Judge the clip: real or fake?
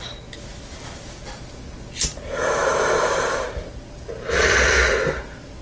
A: real